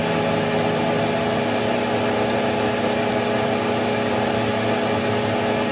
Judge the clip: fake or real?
real